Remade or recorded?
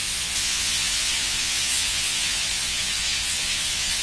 remade